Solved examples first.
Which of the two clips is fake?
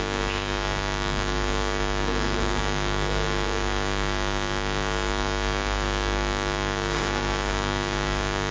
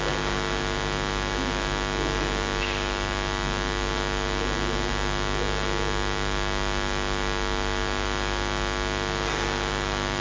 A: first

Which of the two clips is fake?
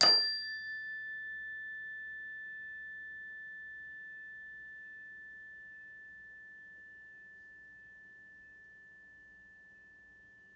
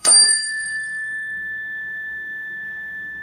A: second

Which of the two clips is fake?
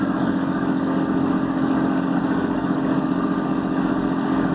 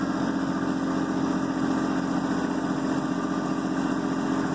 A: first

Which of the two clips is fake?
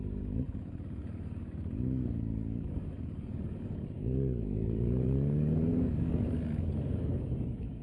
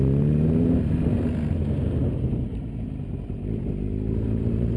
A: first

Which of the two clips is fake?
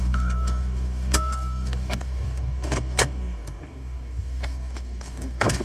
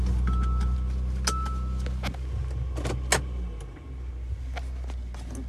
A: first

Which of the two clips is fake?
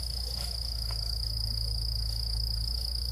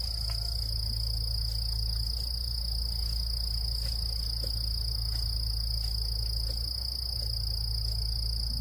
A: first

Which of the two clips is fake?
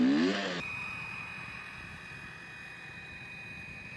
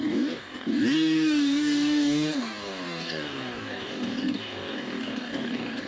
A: second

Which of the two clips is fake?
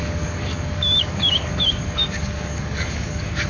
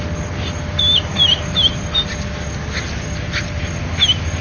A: first